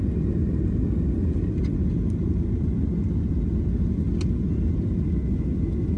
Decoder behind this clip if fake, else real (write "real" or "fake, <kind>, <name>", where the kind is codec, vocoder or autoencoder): real